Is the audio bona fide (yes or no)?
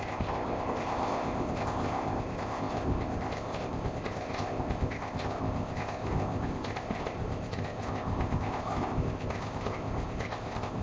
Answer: no